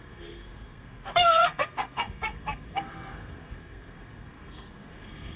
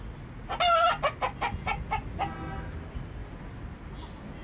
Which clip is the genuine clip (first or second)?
second